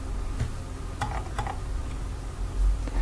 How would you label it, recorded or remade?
recorded